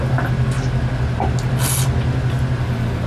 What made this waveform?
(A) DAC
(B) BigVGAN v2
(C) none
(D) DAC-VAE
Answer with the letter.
C